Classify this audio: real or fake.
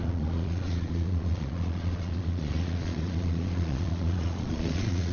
fake